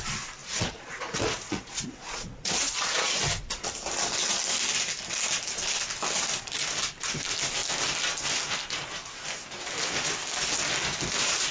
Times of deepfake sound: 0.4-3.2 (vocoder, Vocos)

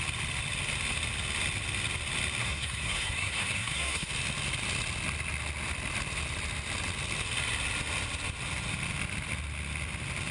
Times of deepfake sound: 2.4-4.1 (codec, SNAC)

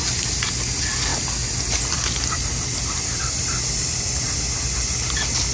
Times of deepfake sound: none

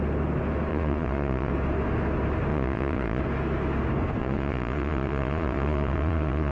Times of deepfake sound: 0.7-1.5 (vocoder, Vocos); 2.5-3.2; 4.2-6.5

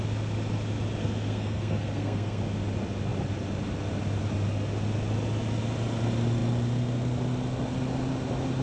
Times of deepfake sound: 1.0-2.4 (codec, SNAC)

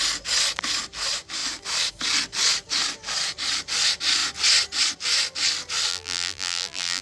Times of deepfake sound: 5.9-7.0 (vocoder, BigVGAN v2)

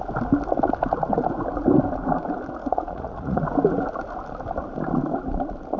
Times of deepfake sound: 2.6-3.4 (vocoder, Vocos)